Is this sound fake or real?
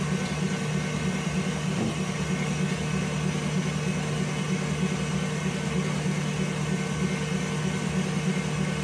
real